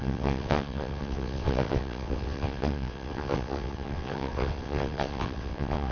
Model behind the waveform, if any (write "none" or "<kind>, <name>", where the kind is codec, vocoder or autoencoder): vocoder, WaveNeXt